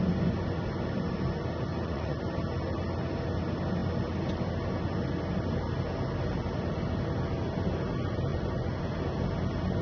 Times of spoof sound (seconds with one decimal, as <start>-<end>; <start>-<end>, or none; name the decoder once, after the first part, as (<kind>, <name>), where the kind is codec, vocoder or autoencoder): 1.7-2.2 (vocoder, Vocos); 8.3-8.8

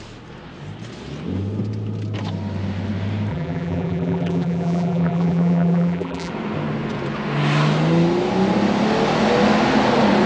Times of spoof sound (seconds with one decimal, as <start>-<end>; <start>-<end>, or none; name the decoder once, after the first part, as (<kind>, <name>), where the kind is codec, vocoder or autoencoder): 3.3-6.3 (vocoder, BigVGAN v2)

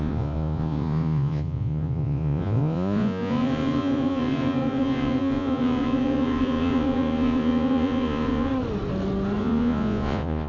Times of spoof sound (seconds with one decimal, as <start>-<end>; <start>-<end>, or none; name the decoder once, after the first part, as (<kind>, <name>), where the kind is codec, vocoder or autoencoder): 0.0-8.5 (vocoder, Vocos); 9.4-10.5

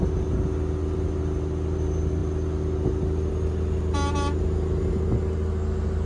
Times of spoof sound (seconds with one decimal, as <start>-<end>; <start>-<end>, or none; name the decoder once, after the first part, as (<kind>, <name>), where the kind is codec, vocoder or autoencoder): none

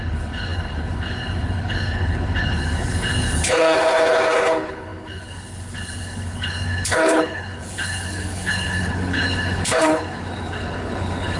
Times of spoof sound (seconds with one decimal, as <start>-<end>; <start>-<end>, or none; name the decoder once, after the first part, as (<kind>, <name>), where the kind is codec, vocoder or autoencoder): 0.0-11.4 (codec, HILCodec)

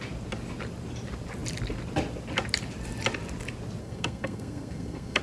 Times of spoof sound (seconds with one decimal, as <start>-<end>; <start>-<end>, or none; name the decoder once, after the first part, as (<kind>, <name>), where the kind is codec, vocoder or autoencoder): 3.8-5.2 (codec, SNAC)

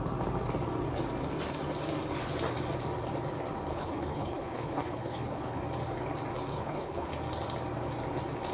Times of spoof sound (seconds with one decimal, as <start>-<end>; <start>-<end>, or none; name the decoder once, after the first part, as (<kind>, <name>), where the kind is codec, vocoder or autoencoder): 3.7-5.6 (codec, HILCodec); 6.5-7.1